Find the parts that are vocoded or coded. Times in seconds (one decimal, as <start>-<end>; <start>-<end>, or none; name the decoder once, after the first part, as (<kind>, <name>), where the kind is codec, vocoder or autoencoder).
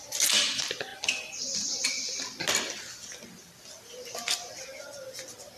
0.9-2.2 (vocoder, BigVGAN v2)